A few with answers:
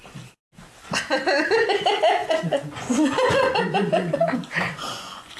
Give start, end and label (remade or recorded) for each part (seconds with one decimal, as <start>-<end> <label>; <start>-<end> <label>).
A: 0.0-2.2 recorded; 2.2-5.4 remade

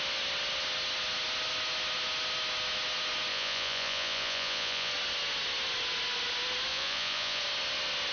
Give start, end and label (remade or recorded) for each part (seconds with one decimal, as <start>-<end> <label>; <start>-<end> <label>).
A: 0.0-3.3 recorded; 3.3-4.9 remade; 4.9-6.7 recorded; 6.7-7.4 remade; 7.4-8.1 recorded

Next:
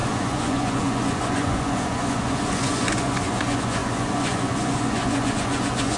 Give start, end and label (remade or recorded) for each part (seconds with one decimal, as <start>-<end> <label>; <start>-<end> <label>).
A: 0.0-6.0 remade

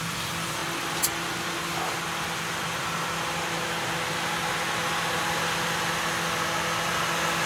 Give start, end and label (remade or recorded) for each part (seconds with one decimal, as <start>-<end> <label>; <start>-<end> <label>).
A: 0.0-7.5 recorded